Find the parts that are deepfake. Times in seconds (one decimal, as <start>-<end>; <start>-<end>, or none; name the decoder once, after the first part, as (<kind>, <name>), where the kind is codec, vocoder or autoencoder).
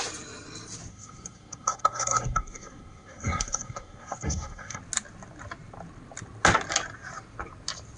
0.9-4.8 (codec, SNAC)